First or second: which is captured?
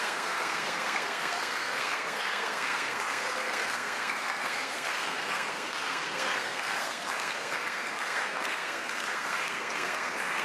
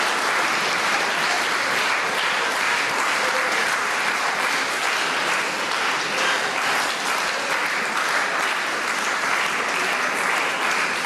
second